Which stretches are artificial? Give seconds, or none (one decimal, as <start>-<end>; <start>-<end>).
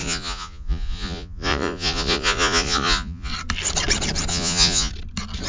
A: 0.0-3.3; 4.3-4.9